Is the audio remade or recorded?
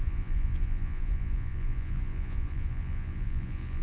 remade